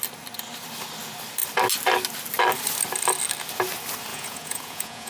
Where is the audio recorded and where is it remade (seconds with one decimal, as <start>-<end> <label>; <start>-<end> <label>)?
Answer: 0.0-4.1 recorded; 4.1-5.1 remade